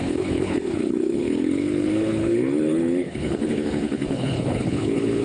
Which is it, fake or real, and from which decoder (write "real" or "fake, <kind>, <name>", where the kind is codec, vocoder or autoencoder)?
fake, codec, HILCodec